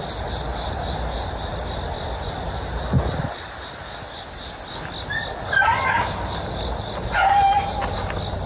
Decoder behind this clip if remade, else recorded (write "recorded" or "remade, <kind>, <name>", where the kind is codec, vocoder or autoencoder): recorded